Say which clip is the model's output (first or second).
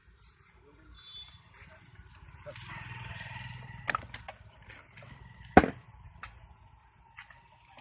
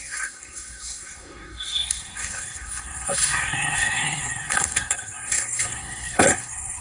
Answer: second